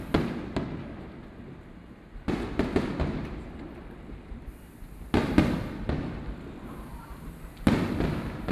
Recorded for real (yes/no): yes